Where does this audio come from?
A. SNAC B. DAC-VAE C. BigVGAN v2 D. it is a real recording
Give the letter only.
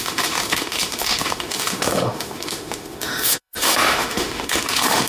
B